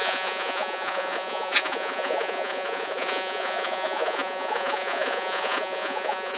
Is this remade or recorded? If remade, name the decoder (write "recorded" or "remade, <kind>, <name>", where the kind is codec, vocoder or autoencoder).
remade, vocoder, Vocos